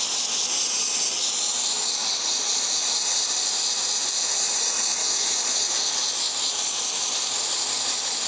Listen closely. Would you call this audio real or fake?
real